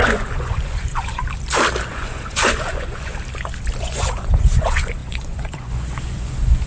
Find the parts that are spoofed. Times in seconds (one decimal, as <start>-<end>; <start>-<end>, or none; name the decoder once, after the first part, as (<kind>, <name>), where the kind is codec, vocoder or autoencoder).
0.0-1.2 (vocoder, Vocos); 1.9-3.1; 3.8-6.7